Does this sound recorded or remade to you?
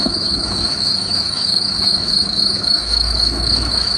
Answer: remade